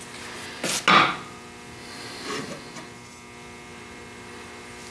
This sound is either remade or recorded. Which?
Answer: recorded